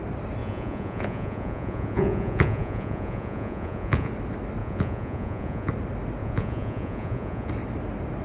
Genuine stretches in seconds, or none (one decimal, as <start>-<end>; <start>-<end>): 0.0-0.4; 4.1-4.6; 5.7-6.2; 7.5-8.2